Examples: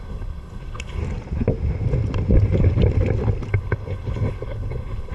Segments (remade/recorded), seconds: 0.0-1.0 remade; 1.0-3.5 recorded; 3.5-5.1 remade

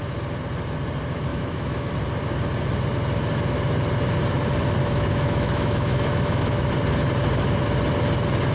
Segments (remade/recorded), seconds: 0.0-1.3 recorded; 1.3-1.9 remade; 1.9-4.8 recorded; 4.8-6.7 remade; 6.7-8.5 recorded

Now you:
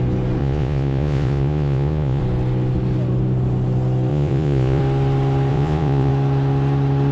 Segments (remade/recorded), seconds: 0.0-0.4 recorded; 0.4-2.2 remade; 2.2-4.1 recorded; 4.1-4.8 remade; 4.8-5.5 recorded; 5.5-6.1 remade; 6.1-7.1 recorded

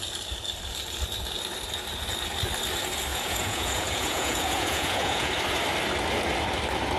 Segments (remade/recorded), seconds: 0.0-3.1 recorded; 3.1-5.3 remade; 5.3-7.0 recorded

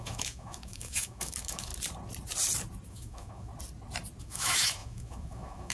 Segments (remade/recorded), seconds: 0.0-1.7 remade; 1.7-2.9 recorded; 2.9-3.5 remade; 3.5-4.2 recorded; 4.2-5.7 remade